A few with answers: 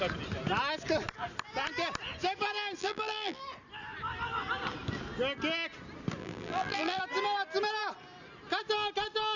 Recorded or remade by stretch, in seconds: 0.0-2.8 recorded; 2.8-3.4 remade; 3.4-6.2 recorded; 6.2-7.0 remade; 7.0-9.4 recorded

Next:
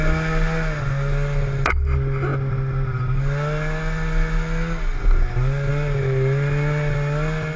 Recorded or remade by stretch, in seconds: 0.0-7.6 recorded

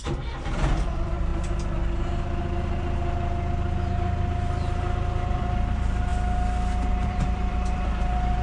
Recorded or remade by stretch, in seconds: 0.0-1.3 remade; 1.3-5.3 recorded; 5.3-6.1 remade; 6.1-6.9 recorded; 6.9-8.4 remade